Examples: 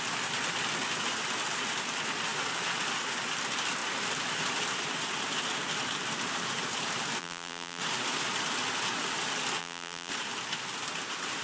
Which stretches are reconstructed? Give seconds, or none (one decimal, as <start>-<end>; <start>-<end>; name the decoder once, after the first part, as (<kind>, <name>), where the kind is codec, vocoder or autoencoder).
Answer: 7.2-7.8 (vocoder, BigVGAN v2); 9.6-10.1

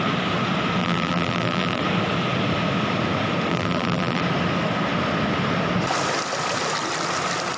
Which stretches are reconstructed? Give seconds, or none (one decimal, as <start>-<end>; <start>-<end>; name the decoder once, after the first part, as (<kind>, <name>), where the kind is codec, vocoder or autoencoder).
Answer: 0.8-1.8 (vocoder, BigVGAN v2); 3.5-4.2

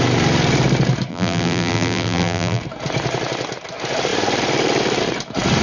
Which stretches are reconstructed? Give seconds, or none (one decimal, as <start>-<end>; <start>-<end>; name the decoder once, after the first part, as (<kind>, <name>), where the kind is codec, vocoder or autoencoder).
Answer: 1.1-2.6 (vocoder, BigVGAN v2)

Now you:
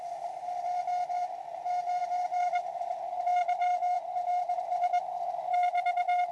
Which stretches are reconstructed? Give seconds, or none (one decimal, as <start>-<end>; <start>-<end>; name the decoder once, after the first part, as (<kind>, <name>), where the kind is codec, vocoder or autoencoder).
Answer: 2.0-2.5 (vocoder, BigVGAN v2); 3.6-4.7

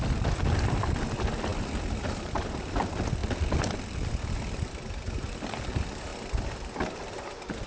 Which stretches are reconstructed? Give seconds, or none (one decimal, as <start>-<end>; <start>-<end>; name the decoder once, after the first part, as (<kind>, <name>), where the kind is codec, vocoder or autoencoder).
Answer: 0.0-6.1 (vocoder, BigVGAN v2); 7.0-7.7